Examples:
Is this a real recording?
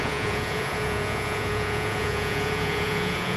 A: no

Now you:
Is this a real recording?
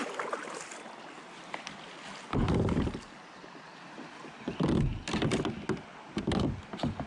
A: yes